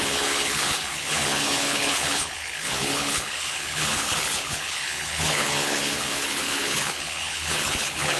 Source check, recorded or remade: remade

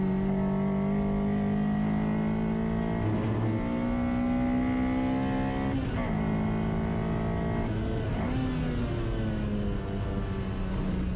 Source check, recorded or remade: recorded